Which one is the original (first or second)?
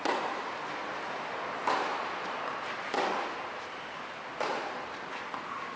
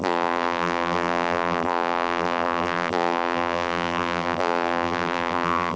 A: first